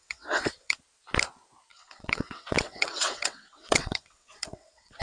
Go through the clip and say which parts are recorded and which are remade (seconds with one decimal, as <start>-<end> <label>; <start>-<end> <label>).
0.0-0.8 remade; 0.8-1.7 recorded; 1.7-5.0 remade